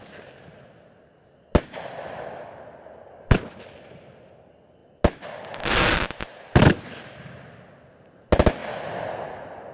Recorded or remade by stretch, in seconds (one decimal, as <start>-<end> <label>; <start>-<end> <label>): 0.0-9.7 recorded

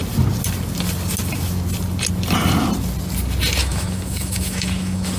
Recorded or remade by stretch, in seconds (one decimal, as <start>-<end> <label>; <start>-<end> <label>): 0.0-3.6 recorded; 3.6-5.2 remade

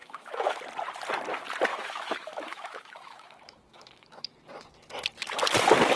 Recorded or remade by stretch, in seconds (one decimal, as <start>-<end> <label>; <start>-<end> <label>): 0.0-0.6 remade; 0.6-1.7 recorded; 1.7-4.2 remade; 4.2-6.0 recorded

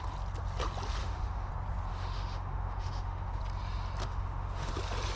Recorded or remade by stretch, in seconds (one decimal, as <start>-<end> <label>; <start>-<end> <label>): 0.0-1.0 recorded; 1.0-1.5 remade; 1.5-1.9 recorded; 1.9-3.4 remade; 3.4-4.0 recorded; 4.0-4.7 remade; 4.7-5.2 recorded